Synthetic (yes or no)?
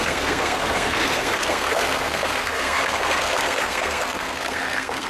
yes